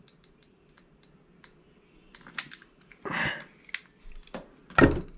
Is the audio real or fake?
real